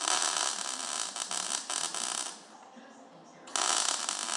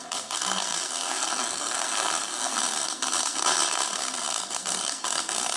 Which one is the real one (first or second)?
first